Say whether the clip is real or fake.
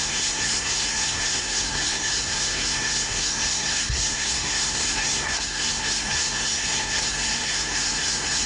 fake